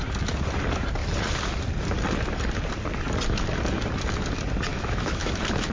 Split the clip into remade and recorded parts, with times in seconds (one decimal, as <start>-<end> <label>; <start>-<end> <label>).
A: 0.0-4.7 recorded; 4.7-5.3 remade; 5.3-5.7 recorded